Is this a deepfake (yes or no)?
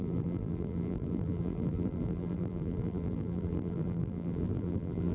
yes